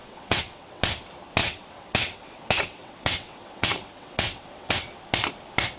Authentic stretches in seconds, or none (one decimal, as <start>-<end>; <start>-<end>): 0.8-1.4; 4.9-5.8